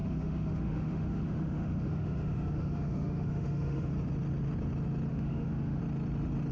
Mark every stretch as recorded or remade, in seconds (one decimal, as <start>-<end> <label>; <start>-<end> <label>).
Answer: 0.0-3.9 remade; 3.9-5.1 recorded; 5.1-5.8 remade; 5.8-6.5 recorded